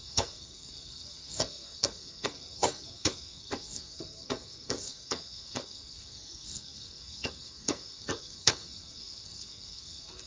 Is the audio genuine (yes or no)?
no